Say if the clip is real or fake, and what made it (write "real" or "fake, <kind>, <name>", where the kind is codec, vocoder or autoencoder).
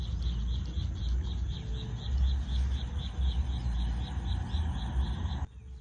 real